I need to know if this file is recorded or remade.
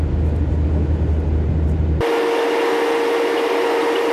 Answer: recorded